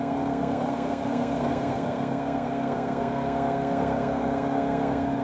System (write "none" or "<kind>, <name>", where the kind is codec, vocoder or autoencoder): codec, SNAC